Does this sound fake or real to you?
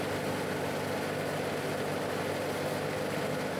real